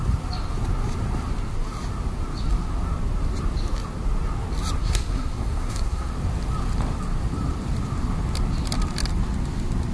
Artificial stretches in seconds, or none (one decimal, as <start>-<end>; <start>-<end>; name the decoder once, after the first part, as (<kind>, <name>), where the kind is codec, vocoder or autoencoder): 4.8-6.1 (codec, SNAC)

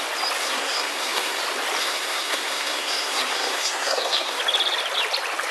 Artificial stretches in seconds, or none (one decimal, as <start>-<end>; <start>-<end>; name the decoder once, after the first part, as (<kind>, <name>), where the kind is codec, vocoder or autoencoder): 0.4-1.4 (codec, SNAC); 1.8-4.4

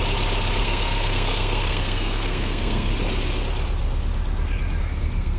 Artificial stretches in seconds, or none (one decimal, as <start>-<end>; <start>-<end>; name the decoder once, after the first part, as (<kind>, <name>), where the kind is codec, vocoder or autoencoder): 0.6-2.9 (codec, SNAC); 4.8-5.4